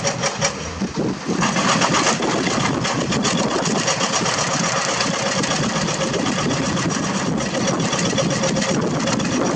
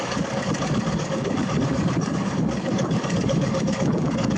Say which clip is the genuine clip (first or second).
first